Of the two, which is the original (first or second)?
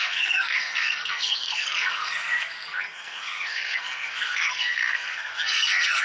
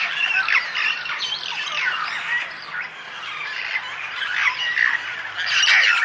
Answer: second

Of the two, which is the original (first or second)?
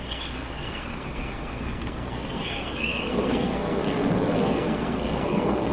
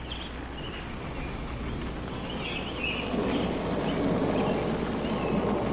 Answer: second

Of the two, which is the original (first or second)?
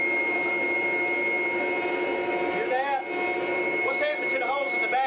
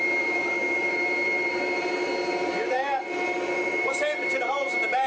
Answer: first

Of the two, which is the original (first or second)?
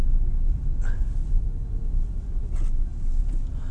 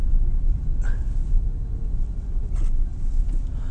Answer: first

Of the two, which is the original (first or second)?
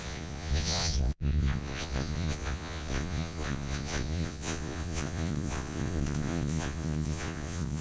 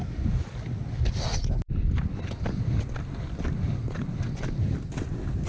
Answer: second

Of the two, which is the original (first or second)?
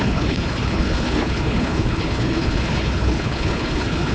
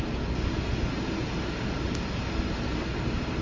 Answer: second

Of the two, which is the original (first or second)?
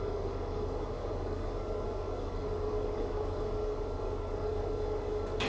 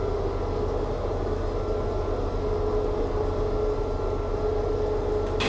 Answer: second